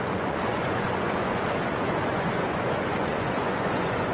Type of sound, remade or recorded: remade